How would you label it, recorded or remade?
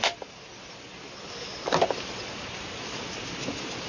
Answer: recorded